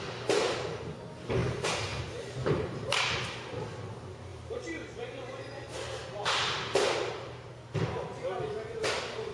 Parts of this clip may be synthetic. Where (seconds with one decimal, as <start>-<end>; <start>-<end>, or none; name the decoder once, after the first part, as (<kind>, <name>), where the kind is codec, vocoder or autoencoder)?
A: 1.4-3.1 (vocoder, BigVGAN v2); 4.3-6.9